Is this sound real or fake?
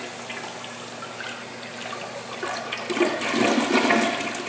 real